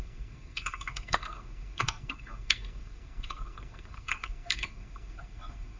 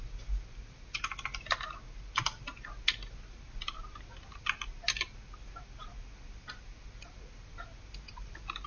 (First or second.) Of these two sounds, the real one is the second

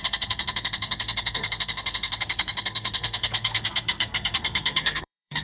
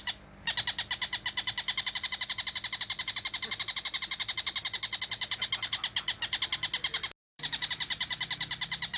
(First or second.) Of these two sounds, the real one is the second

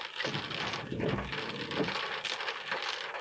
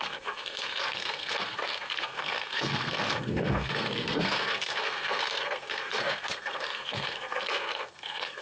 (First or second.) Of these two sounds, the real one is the first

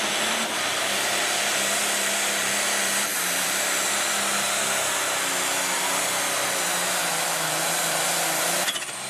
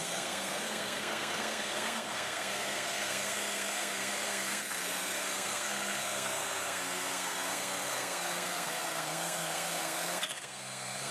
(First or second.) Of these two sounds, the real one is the first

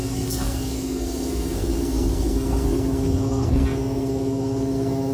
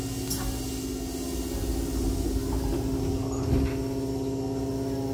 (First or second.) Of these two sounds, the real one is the second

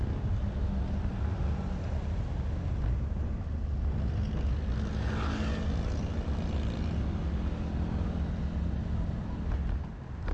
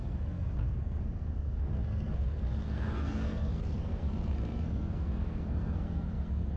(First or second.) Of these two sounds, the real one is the first